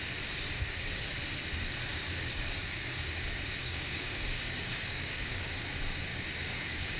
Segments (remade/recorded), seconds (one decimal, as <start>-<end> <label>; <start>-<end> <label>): 0.0-1.9 recorded; 1.9-2.9 remade; 2.9-3.6 recorded; 3.6-5.5 remade; 5.5-6.1 recorded; 6.1-7.0 remade